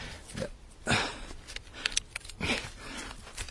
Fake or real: real